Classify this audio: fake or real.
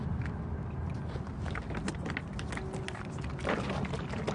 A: real